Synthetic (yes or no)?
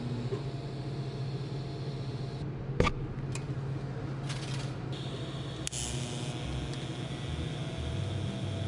no